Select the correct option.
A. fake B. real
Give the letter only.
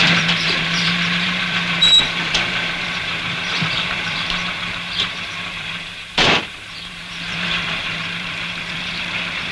A